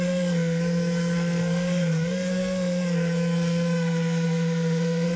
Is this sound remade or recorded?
remade